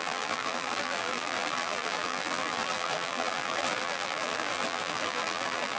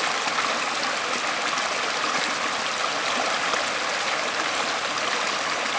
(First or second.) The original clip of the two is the second